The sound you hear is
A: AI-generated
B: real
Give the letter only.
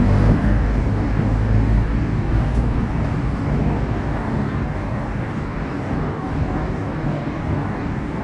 A